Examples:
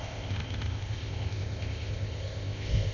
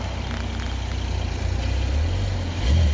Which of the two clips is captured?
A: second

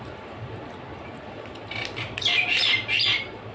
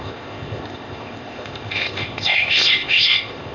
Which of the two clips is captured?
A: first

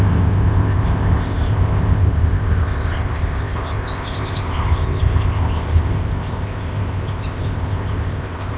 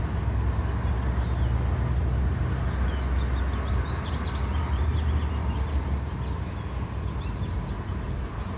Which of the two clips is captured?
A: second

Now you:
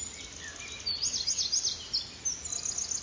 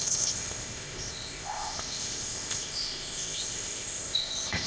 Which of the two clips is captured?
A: first